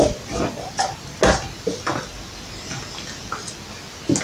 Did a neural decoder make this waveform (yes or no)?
no